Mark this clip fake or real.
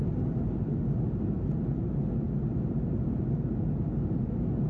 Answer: real